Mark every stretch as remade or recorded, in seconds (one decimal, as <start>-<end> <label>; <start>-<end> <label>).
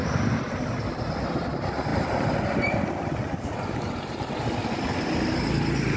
0.0-6.0 recorded